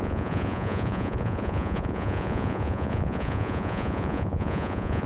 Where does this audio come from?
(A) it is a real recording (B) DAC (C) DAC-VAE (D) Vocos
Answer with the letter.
D